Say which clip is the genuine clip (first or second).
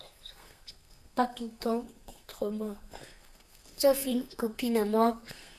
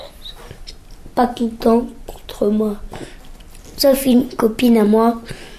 second